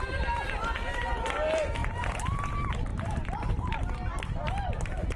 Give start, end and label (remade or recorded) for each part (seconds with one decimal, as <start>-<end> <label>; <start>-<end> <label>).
0.0-1.8 recorded; 1.8-2.4 remade; 2.4-2.9 recorded; 2.9-3.6 remade; 3.6-5.2 recorded